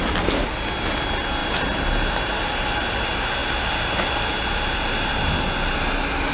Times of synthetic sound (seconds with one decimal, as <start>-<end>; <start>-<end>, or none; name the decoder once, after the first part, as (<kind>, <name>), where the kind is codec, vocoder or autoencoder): none